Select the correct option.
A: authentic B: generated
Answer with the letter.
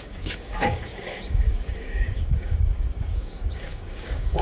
B